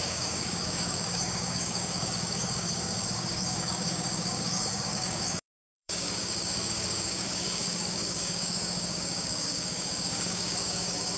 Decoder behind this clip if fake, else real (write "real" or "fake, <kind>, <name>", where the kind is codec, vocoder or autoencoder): fake, codec, DAC